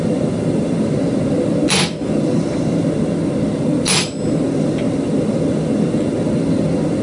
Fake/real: real